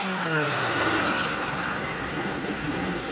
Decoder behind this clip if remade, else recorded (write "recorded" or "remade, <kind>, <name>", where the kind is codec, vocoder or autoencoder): remade, codec, SNAC